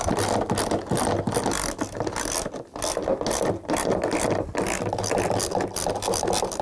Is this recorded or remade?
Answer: recorded